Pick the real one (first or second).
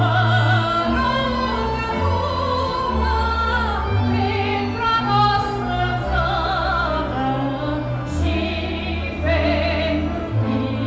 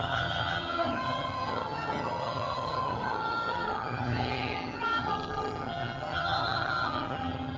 first